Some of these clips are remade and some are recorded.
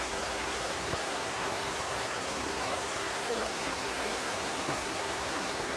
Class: remade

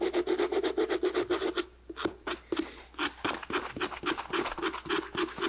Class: recorded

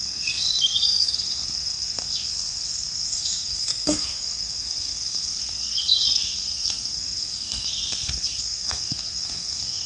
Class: remade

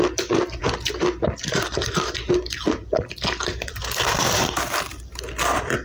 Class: remade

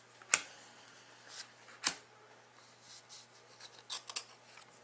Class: recorded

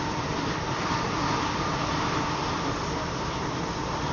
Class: remade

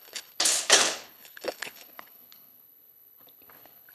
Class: remade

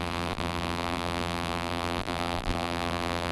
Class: remade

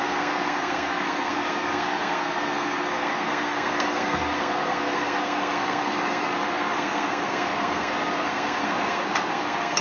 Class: remade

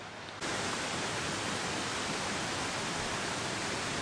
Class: recorded